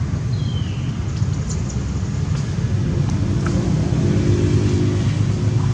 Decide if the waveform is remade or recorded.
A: recorded